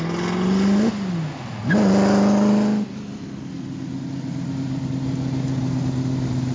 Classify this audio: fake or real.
real